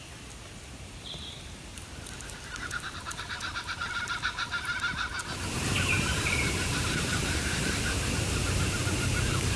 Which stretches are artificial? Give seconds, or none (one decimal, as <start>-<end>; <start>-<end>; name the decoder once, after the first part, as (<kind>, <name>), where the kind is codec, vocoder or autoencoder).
0.5-2.0 (vocoder, BigVGAN v2); 7.1-8.1